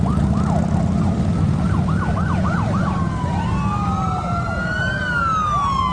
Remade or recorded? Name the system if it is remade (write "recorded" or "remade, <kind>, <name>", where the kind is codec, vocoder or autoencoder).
recorded